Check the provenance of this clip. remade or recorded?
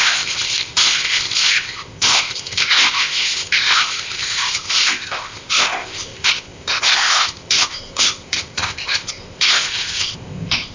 remade